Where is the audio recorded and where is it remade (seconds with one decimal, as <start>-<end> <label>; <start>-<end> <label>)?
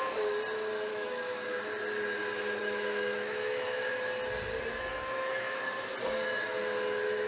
0.0-0.9 recorded; 0.9-1.6 remade; 1.6-2.6 recorded; 2.6-3.9 remade; 3.9-4.9 recorded; 4.9-5.6 remade; 5.6-7.3 recorded